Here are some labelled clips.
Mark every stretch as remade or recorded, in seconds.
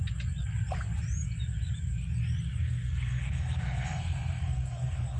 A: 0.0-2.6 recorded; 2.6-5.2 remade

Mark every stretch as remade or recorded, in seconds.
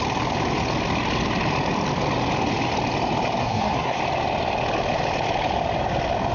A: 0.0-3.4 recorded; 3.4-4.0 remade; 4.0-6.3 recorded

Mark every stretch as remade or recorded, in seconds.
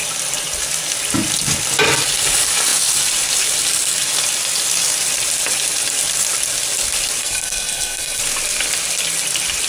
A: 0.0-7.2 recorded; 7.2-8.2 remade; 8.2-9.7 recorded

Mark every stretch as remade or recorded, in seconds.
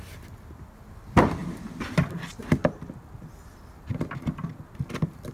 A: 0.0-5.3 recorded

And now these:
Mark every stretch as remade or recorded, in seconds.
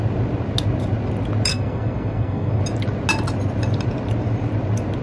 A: 0.0-1.5 recorded; 1.5-2.6 remade; 2.6-5.0 recorded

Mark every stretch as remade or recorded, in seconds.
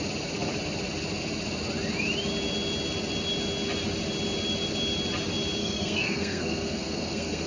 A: 0.0-5.6 recorded; 5.6-7.5 remade